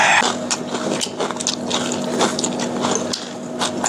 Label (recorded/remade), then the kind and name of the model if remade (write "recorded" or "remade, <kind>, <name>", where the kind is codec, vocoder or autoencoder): recorded